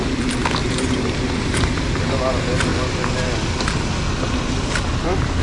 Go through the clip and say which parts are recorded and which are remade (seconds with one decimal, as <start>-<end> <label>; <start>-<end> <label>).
0.0-5.4 recorded